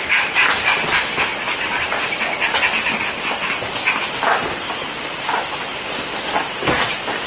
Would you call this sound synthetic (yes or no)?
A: no